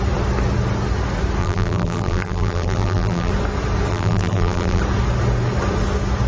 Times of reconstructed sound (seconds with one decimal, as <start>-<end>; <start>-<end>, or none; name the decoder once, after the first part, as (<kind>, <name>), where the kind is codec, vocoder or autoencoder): 1.4-3.3 (vocoder, BigVGAN v2); 3.9-4.8